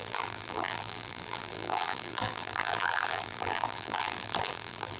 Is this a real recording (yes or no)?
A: no